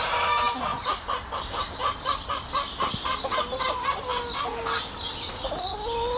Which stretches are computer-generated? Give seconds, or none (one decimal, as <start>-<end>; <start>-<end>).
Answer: 0.7-1.4; 1.8-2.5